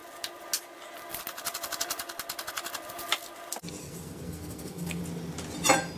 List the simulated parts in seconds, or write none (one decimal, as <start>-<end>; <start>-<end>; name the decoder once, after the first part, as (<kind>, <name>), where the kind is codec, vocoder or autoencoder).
3.8-5.0 (codec, SNAC)

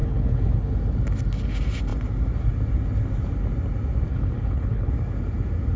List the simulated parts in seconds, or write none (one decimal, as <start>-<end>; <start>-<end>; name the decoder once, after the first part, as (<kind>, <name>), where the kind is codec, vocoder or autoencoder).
0.0-0.7 (codec, HILCodec); 4.1-4.9

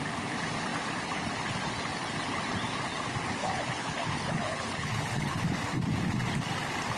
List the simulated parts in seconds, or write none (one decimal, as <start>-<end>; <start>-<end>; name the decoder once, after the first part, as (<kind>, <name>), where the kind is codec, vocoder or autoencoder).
3.4-5.4 (codec, HILCodec)

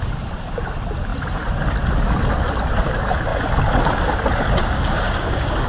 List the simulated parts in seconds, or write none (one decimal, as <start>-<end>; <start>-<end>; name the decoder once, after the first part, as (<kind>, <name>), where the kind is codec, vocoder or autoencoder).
4.6-5.7 (codec, DAC)

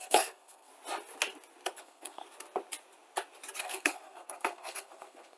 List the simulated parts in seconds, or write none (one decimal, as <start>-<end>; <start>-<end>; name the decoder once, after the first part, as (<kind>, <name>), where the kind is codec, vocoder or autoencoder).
0.0-0.7 (codec, SNAC); 1.8-2.2; 3.6-5.4